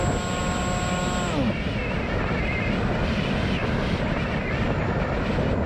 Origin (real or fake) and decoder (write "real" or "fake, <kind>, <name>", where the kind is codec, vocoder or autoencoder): real